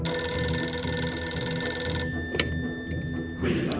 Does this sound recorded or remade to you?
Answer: recorded